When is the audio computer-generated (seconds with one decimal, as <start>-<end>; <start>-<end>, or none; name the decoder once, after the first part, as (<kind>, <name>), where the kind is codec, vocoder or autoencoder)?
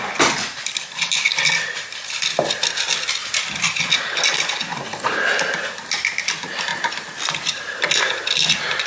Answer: 3.2-3.8 (vocoder, BigVGAN v2)